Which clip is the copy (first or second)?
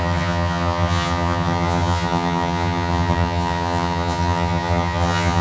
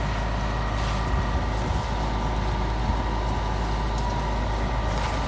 first